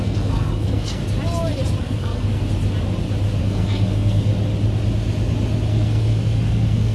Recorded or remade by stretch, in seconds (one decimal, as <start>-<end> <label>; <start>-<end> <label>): 0.0-1.0 remade; 1.0-1.8 recorded; 1.8-2.4 remade; 2.4-3.4 recorded; 3.4-4.3 remade; 4.3-5.7 recorded; 5.7-6.9 remade

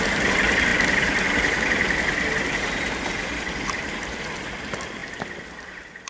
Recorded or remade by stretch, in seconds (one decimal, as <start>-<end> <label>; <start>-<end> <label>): 0.0-6.1 recorded

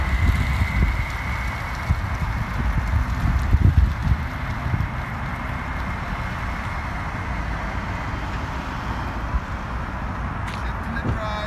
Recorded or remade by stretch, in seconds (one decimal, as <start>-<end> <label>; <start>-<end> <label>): 0.0-4.0 recorded; 4.0-5.4 remade; 5.4-11.5 recorded

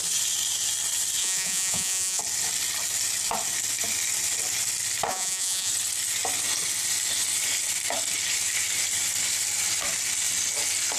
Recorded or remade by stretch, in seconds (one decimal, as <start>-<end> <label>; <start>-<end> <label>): 0.0-1.2 recorded; 1.2-2.2 remade; 2.2-5.1 recorded; 5.1-5.7 remade; 5.7-11.0 recorded